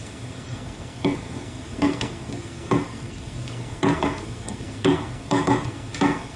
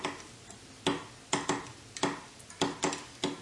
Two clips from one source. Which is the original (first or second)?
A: second